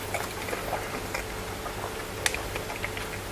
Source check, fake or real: real